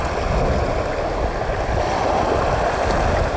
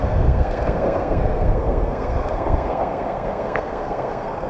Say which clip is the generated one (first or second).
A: second